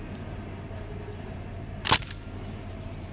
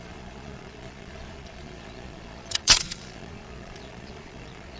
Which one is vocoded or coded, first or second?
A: second